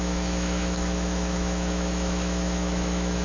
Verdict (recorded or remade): remade